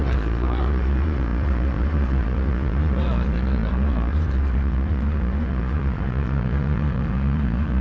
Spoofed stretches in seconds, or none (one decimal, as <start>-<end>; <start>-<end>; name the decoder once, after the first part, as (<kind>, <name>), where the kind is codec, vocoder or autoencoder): 0.0-7.8 (vocoder, Vocos)